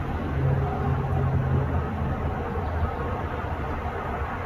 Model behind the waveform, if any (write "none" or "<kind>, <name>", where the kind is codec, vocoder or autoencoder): none